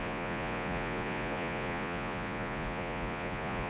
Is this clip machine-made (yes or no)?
yes